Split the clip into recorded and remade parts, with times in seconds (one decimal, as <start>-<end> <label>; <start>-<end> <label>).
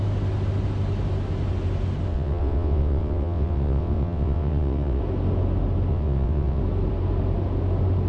0.0-2.1 recorded; 2.1-5.0 remade; 5.0-5.9 recorded; 5.9-6.6 remade; 6.6-8.1 recorded